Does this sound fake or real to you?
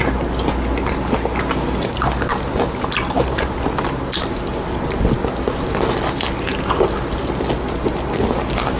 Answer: real